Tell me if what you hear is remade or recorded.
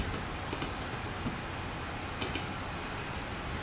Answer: recorded